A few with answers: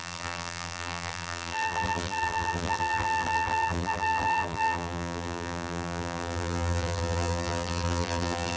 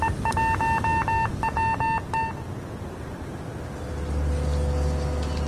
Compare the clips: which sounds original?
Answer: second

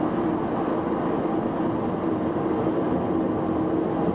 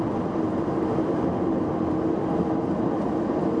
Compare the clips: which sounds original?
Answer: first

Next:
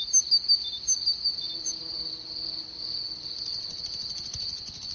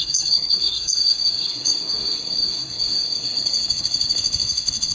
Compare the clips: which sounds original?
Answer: first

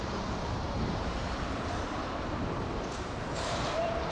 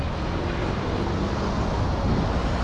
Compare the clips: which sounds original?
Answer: second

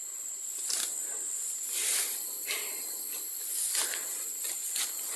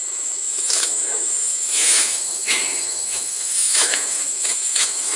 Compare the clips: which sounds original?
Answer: first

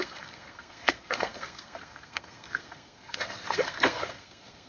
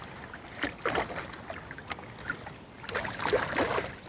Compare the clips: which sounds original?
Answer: second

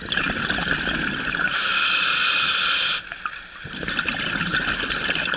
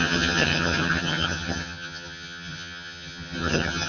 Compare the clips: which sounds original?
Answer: first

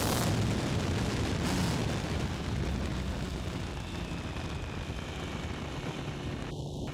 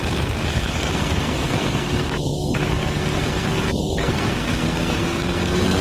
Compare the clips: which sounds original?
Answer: first